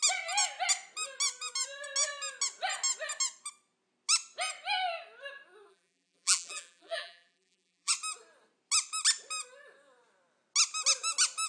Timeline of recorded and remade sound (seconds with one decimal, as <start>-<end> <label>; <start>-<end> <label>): 0.0-5.7 recorded; 5.7-7.9 remade; 7.9-11.5 recorded